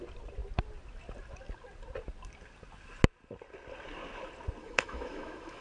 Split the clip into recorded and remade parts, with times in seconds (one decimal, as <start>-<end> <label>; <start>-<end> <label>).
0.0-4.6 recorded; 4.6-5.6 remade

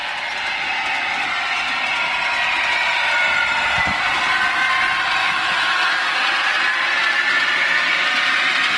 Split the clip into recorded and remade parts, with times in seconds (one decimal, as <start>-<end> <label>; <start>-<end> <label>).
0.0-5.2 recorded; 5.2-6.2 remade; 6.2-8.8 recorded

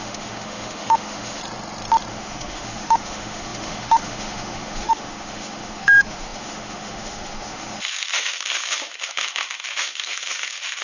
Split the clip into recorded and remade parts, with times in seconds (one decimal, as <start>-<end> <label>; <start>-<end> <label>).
0.0-1.4 remade; 1.4-2.1 recorded; 2.1-10.8 remade